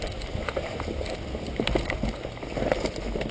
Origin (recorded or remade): recorded